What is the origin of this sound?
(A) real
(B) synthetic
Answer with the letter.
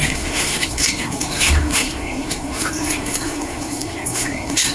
B